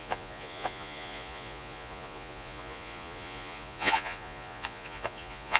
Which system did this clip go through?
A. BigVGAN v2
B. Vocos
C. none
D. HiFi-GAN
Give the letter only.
B